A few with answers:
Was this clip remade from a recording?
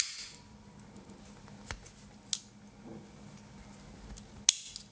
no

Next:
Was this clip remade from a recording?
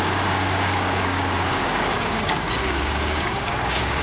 yes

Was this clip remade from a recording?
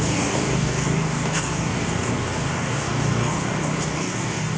yes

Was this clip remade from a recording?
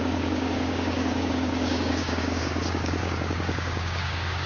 yes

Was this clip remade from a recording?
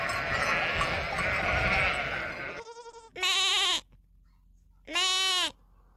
no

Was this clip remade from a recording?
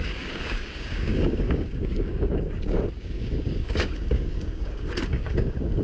yes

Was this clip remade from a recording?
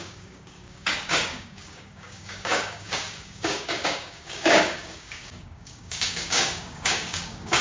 yes